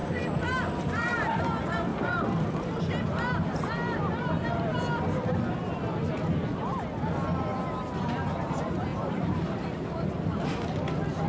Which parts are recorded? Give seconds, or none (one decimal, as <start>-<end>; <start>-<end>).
1.4-1.9; 2.8-8.9; 10.2-11.3